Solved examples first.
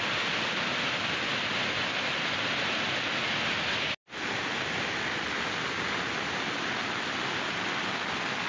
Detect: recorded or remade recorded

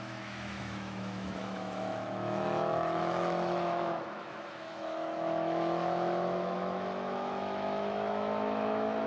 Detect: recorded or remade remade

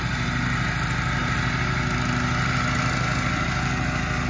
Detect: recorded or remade recorded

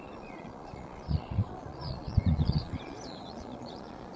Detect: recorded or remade remade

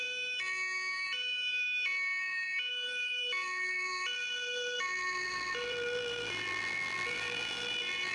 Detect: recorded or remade remade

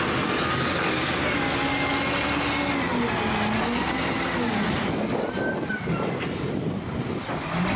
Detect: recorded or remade recorded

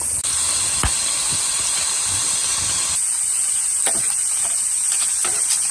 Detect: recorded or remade recorded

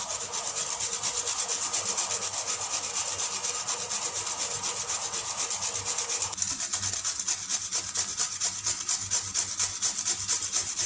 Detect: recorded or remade recorded